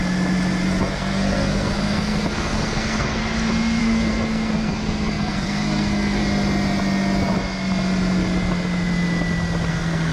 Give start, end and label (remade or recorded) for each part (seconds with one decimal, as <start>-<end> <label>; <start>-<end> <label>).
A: 0.0-0.8 recorded; 0.8-3.2 remade; 3.2-3.8 recorded; 3.8-6.2 remade; 6.2-9.7 recorded; 9.7-10.1 remade

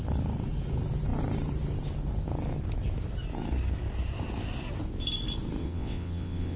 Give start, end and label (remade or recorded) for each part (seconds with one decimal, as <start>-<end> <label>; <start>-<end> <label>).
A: 0.0-5.6 recorded; 5.6-6.6 remade

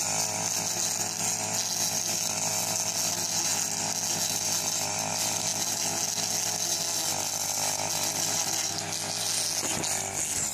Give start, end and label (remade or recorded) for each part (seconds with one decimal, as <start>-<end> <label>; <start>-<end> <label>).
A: 0.0-10.5 recorded